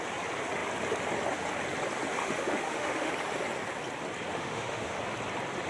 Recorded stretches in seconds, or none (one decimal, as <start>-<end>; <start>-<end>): 0.0-2.2; 3.1-4.3; 5.0-5.7